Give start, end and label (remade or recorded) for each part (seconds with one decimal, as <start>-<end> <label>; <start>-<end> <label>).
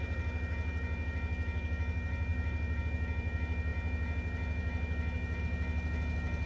0.0-6.5 recorded